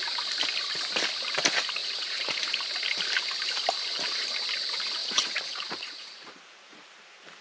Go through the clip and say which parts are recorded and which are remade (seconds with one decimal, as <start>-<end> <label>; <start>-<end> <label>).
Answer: 0.0-1.8 recorded; 1.8-2.6 remade; 2.6-5.0 recorded; 5.0-6.9 remade; 6.9-7.4 recorded